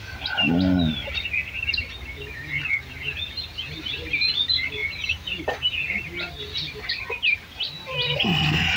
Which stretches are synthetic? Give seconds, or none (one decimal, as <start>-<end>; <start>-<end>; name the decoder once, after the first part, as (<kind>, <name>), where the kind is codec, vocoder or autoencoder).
none